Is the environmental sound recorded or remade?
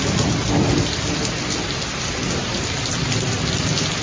recorded